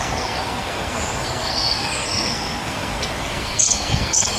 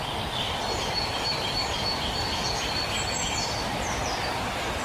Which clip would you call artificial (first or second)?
first